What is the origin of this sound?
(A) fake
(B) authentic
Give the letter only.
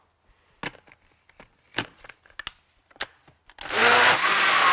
B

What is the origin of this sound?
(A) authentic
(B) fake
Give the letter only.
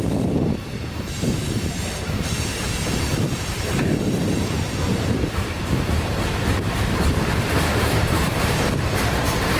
B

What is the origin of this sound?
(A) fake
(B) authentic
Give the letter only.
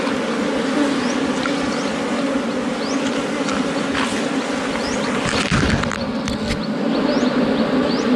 B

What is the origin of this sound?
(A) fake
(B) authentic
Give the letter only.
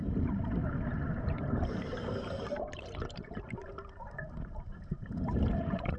A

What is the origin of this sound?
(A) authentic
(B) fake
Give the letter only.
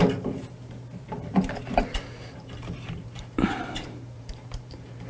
B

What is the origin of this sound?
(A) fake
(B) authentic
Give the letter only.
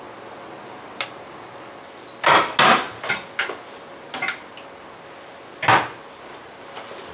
B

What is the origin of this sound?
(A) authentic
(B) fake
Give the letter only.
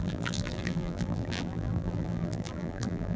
B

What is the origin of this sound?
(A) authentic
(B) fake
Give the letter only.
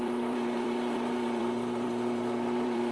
B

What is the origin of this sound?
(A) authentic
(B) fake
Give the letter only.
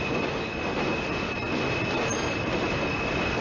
A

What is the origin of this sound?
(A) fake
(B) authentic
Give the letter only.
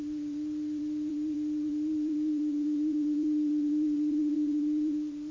A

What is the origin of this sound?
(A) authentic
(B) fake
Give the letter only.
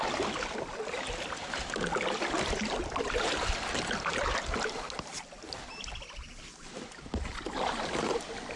A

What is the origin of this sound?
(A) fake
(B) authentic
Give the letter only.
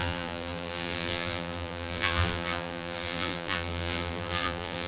A